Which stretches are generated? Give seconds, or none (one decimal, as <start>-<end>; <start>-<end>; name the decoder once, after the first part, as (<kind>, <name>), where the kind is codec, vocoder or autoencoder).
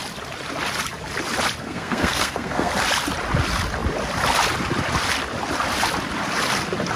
1.6-2.7 (codec, SNAC)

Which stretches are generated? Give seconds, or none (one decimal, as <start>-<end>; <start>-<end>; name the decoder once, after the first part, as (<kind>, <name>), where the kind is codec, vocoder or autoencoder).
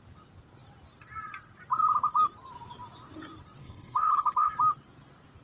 3.6-4.5 (codec, HILCodec)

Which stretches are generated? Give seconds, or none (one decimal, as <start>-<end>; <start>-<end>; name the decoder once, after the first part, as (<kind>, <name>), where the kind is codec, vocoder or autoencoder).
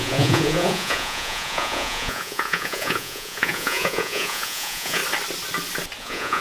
0.0-5.0 (vocoder, Vocos); 6.0-6.4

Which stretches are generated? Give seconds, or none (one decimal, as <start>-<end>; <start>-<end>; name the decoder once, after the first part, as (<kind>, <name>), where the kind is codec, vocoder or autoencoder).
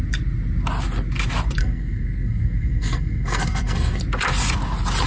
1.6-4.0 (codec, SNAC)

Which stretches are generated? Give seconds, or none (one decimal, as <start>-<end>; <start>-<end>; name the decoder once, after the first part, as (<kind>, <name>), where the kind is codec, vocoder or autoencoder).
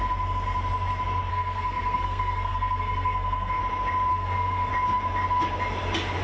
1.3-3.6 (codec, SNAC); 4.1-4.7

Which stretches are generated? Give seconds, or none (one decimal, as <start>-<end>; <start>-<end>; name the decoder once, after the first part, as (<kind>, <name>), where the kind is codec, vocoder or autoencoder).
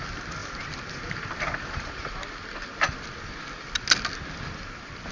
none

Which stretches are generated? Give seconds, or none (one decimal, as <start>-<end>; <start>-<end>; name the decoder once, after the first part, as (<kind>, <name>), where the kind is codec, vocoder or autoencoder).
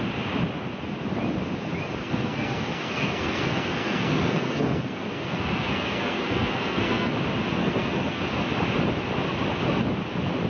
2.0-7.1 (codec, SNAC); 7.6-8.2